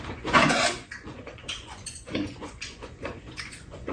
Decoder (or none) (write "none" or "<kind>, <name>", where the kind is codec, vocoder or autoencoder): vocoder, Vocos